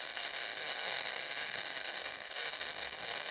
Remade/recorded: remade